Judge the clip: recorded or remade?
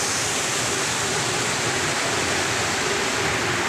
recorded